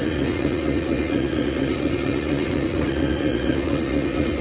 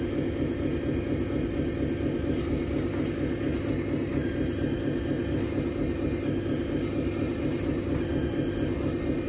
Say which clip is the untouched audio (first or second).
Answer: second